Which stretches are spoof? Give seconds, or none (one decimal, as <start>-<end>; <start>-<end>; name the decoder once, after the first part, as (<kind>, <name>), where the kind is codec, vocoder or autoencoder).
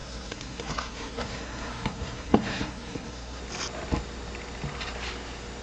0.0-3.4 (codec, SNAC)